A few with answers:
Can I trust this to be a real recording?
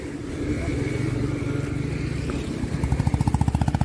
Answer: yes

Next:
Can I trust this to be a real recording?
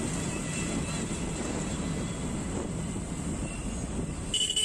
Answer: yes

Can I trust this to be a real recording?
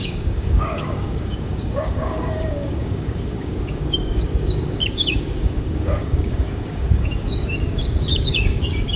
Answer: no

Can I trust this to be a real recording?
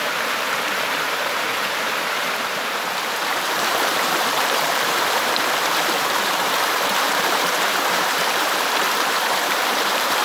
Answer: no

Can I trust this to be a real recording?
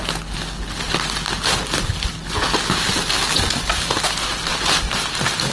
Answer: yes